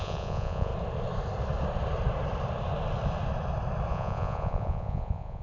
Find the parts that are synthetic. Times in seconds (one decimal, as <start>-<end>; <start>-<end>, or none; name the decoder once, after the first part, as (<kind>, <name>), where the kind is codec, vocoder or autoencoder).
0.0-0.7 (vocoder, Vocos); 3.9-5.4